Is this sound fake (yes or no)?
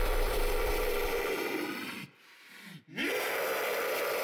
yes